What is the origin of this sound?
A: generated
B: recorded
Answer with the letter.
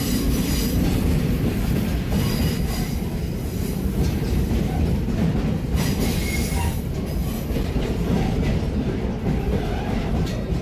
A